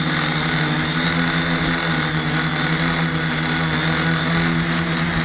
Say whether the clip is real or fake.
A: real